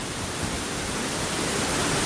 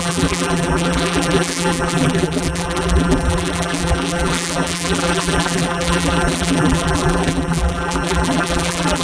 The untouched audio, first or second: first